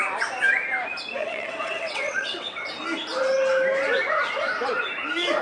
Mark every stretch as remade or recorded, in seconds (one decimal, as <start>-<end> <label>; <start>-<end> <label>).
0.0-1.2 recorded; 1.2-2.7 remade; 2.7-5.4 recorded